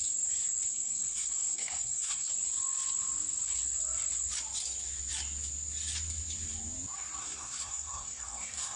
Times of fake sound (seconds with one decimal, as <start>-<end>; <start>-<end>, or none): 0.7-2.3; 7.2-8.8